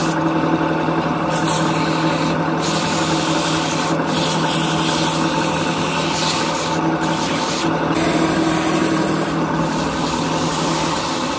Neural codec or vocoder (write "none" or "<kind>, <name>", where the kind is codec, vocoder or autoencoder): none